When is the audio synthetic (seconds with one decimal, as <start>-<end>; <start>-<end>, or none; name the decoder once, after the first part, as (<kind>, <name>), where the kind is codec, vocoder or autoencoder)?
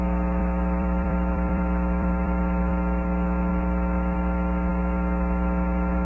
0.4-2.7 (vocoder, BigVGAN v2)